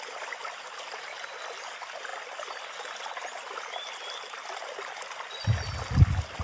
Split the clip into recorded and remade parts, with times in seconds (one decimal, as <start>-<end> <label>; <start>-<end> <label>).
0.0-6.4 recorded